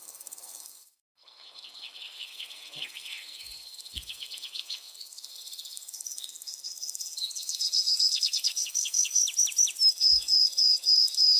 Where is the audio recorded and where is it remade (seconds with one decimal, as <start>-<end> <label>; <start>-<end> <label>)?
0.0-9.2 remade; 9.2-9.9 recorded; 9.9-11.4 remade